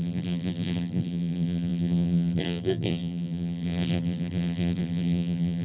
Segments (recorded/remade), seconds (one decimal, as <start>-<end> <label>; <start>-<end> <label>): 0.0-5.6 remade